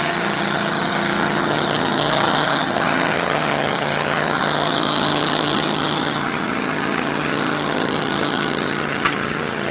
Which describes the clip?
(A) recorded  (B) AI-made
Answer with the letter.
B